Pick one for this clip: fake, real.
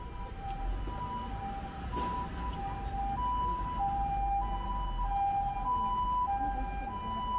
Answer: real